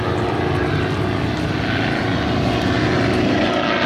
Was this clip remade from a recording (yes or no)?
no